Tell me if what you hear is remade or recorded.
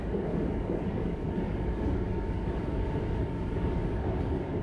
remade